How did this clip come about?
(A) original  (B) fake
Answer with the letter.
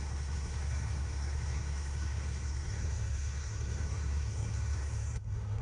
B